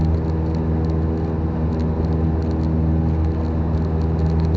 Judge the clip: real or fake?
real